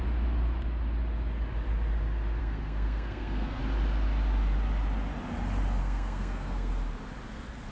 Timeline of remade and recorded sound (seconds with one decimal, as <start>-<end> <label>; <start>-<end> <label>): 0.0-2.4 recorded; 2.4-3.6 remade; 3.6-5.8 recorded; 5.8-6.7 remade; 6.7-7.7 recorded